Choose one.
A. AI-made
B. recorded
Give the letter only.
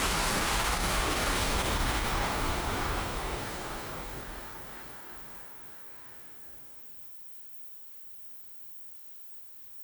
A